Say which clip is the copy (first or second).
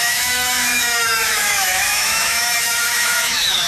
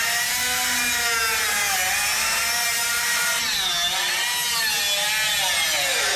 first